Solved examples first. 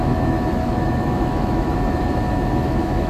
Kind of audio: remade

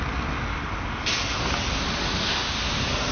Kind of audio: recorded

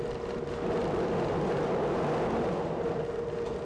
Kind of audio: recorded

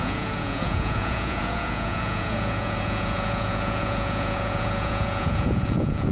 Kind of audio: remade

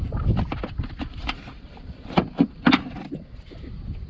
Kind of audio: remade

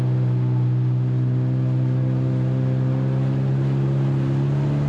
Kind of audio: recorded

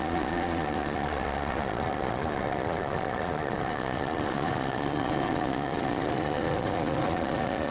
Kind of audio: remade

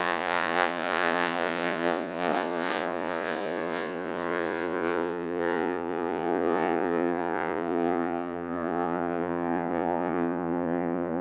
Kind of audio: remade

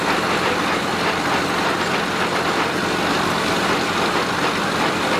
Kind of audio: recorded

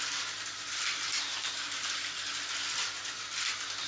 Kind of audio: recorded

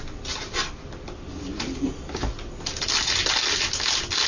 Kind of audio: recorded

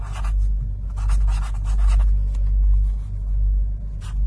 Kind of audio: recorded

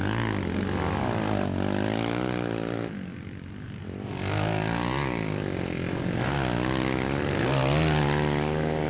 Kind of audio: recorded